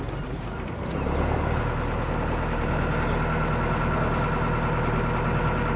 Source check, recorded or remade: recorded